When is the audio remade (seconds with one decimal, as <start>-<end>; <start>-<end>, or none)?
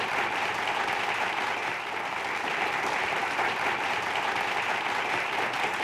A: none